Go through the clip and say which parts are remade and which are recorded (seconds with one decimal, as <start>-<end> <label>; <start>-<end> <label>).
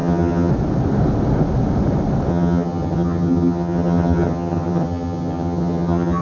0.0-0.5 remade; 0.5-2.3 recorded; 2.3-6.2 remade